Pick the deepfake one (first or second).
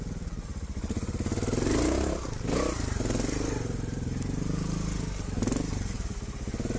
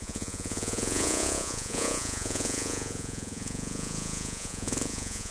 second